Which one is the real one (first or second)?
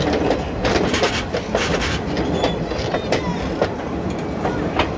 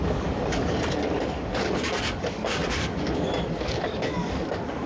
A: first